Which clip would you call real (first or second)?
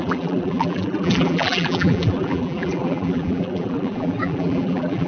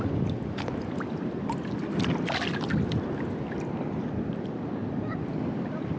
second